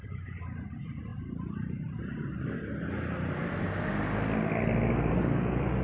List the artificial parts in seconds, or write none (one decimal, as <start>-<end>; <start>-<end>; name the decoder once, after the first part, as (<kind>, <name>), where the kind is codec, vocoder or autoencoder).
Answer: none